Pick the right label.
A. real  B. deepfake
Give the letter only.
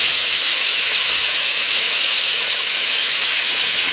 B